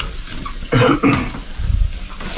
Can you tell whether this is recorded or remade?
recorded